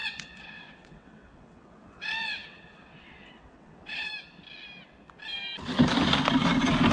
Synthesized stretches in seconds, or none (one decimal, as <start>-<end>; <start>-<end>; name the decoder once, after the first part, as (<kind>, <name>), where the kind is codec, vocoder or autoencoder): 0.0-4.1 (vocoder, WaveNeXt)